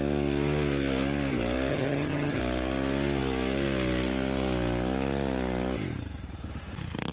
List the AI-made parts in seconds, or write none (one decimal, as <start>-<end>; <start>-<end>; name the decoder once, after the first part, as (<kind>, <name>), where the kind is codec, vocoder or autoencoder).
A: 1.7-2.4 (vocoder, HiFi-GAN)